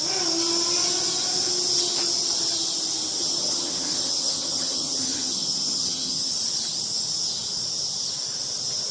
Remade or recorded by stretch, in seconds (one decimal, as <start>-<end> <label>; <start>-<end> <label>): 0.0-3.2 recorded; 3.2-6.3 remade; 6.3-8.9 recorded